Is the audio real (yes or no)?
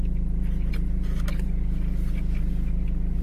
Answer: yes